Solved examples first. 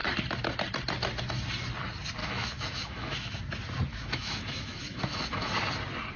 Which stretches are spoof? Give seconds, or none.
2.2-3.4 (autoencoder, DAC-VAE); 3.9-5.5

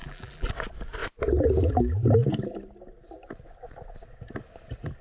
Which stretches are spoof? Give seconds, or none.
0.0-0.5 (vocoder, BigVGAN v2)

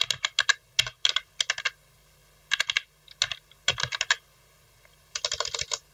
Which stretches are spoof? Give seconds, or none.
none

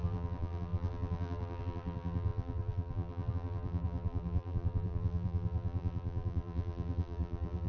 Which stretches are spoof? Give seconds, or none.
0.0-7.7 (vocoder, BigVGAN v2)

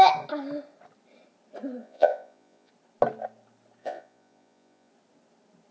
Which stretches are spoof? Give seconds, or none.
1.8-2.7 (vocoder, Vocos); 3.8-4.9

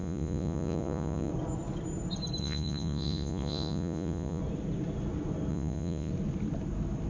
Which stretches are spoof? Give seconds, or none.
0.0-1.3 (vocoder, Vocos); 2.4-4.4; 5.5-6.1

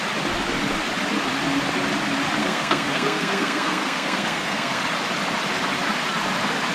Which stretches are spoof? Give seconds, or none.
2.4-4.8 (codec, SNAC)